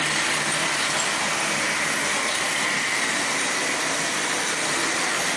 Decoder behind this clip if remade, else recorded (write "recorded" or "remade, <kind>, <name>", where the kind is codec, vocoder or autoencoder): recorded